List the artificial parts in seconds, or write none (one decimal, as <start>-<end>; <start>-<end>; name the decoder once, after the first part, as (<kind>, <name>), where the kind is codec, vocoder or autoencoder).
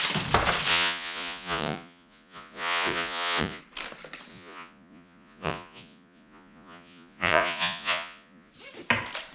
0.7-3.6 (vocoder, Vocos); 4.3-8.5